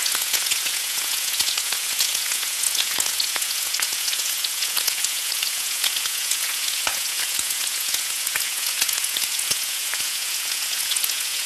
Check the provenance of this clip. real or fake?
fake